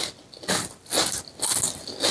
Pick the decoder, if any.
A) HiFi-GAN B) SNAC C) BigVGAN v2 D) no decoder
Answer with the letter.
D